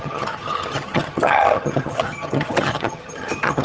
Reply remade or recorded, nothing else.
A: remade